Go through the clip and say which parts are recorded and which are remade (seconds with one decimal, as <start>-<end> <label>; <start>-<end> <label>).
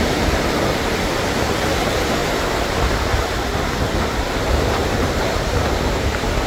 0.0-2.2 remade; 2.2-4.0 recorded; 4.0-6.5 remade